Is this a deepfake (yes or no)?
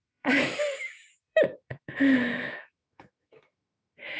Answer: yes